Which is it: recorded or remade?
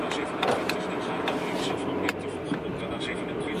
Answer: remade